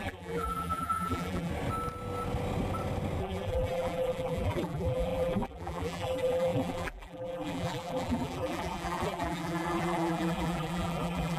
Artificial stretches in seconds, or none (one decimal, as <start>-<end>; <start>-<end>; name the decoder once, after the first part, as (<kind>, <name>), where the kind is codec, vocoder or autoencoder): 0.0-1.5 (vocoder, BigVGAN v2); 3.2-11.4